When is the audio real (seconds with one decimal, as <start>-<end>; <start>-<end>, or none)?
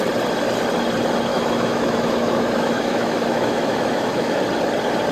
0.0-1.3; 4.4-5.1